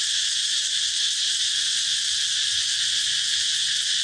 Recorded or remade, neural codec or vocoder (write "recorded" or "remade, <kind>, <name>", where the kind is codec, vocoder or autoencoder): remade, vocoder, BigVGAN v2